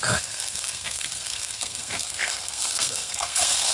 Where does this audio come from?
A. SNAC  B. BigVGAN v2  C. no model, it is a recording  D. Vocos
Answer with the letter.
A